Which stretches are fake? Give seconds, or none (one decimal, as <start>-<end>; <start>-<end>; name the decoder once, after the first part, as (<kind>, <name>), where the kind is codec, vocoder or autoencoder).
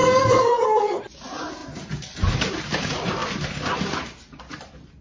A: 0.0-1.0 (codec, DAC)